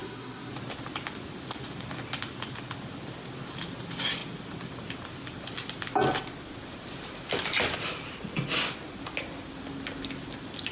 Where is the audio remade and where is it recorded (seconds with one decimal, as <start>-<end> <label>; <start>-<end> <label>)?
0.0-0.5 remade; 0.5-10.7 recorded